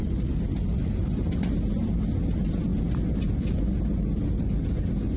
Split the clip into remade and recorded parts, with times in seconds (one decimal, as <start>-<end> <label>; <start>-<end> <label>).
0.0-5.2 recorded